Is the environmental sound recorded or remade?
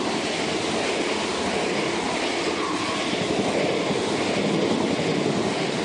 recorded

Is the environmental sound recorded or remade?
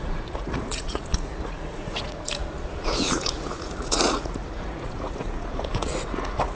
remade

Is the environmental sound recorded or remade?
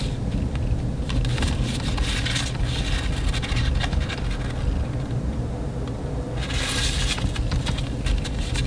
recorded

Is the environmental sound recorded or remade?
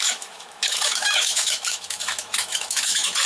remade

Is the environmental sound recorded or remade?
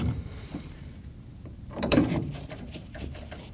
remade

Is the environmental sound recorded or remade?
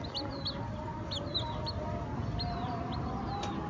recorded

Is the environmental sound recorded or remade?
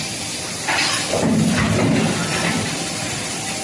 recorded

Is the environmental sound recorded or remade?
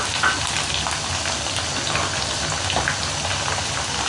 recorded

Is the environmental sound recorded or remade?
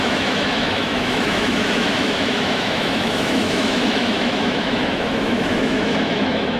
remade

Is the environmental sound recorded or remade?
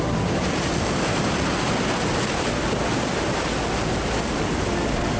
recorded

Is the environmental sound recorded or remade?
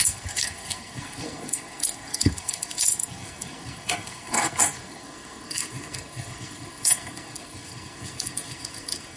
remade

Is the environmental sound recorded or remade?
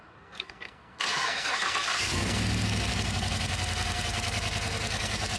remade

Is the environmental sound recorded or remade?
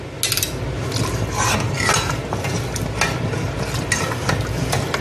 recorded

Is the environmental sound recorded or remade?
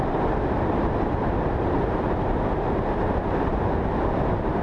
remade